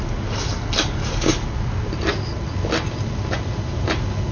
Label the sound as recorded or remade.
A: recorded